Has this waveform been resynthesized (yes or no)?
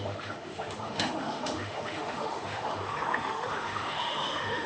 yes